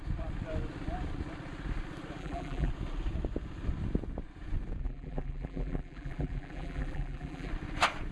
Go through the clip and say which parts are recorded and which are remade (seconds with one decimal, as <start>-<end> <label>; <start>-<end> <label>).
0.0-2.2 recorded; 2.2-2.7 remade; 2.7-4.8 recorded; 4.8-7.5 remade; 7.5-8.1 recorded